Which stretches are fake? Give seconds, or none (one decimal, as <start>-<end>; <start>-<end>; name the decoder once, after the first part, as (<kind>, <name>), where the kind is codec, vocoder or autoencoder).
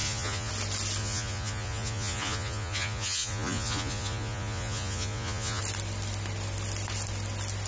0.0-0.5 (vocoder, Vocos); 1.0-5.6